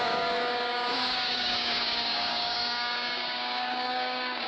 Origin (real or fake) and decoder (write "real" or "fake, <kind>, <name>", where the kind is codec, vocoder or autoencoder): fake, codec, DAC